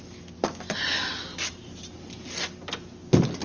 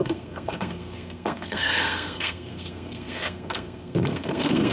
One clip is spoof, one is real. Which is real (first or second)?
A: first